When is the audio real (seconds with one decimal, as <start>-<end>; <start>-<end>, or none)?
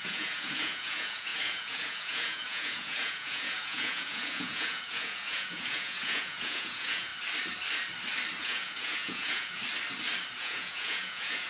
7.1-8.4; 9.6-10.4